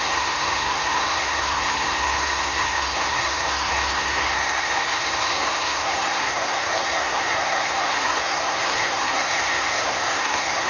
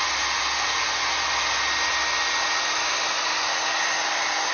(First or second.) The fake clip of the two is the first